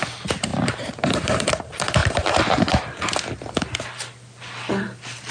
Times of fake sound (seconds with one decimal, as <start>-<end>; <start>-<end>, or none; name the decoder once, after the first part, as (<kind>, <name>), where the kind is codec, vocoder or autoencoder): 0.5-1.4 (vocoder, BigVGAN v2); 2.0-3.0